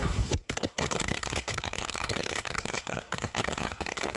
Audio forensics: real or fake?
fake